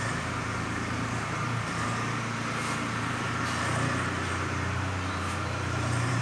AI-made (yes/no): yes